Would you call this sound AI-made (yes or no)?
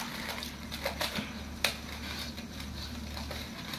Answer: no